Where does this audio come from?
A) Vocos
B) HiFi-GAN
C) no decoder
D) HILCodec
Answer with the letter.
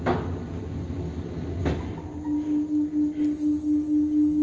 C